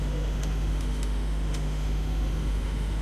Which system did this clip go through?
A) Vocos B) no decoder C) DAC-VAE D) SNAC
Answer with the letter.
C